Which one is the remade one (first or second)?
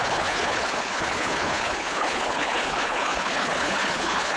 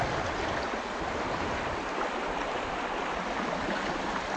first